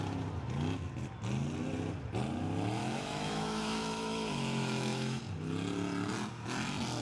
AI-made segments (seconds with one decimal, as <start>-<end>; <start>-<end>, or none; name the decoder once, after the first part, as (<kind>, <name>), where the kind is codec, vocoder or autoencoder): 2.8-5.2 (autoencoder, DAC-VAE)